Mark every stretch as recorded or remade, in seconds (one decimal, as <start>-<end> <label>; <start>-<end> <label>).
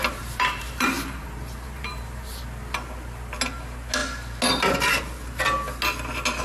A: 0.0-2.4 remade; 2.4-6.4 recorded